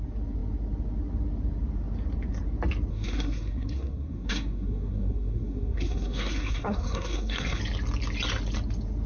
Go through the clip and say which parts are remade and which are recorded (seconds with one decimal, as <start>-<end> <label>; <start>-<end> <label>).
0.0-2.9 recorded; 2.9-7.6 remade; 7.6-9.1 recorded